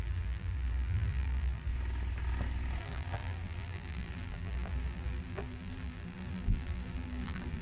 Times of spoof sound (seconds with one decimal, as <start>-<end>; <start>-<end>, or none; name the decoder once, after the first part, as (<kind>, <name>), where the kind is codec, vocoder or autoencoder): 0.0-1.7 (vocoder, BigVGAN v2); 2.8-7.6